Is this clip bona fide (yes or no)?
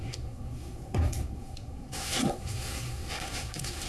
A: no